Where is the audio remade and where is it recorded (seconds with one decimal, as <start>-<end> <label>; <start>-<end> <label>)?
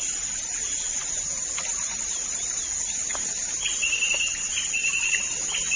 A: 0.0-5.8 recorded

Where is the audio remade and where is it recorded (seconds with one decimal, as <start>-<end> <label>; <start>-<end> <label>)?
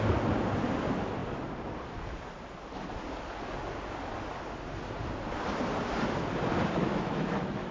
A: 0.0-6.8 recorded; 6.8-7.7 remade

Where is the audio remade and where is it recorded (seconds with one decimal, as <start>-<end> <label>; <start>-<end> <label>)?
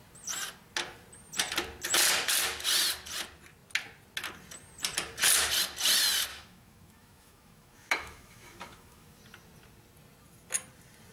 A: 0.0-6.3 recorded; 6.3-9.2 remade; 9.2-11.1 recorded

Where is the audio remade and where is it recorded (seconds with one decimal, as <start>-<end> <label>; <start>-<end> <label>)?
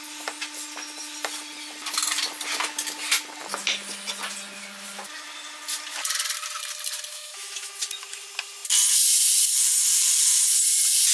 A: 0.0-7.1 recorded; 7.1-7.7 remade; 7.7-11.1 recorded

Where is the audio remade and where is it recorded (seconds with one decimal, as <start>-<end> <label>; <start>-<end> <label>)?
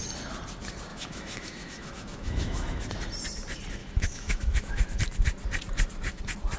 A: 0.0-0.9 recorded; 0.9-2.9 remade; 2.9-3.8 recorded; 3.8-5.0 remade; 5.0-6.6 recorded